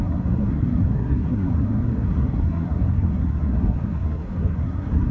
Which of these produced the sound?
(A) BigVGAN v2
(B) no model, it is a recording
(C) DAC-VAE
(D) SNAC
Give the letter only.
D